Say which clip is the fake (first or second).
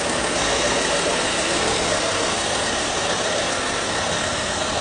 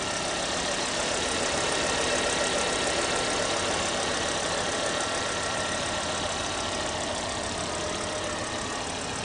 first